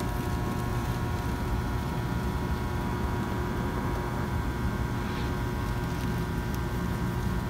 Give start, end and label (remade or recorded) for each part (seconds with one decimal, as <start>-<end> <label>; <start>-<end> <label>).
0.0-0.7 recorded; 0.7-5.2 remade; 5.2-7.5 recorded